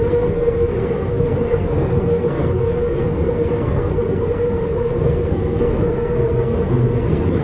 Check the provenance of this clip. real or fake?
fake